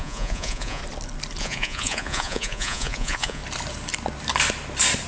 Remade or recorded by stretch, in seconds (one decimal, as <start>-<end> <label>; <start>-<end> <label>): 0.0-0.8 remade; 0.8-1.4 recorded; 1.4-3.4 remade; 3.4-5.1 recorded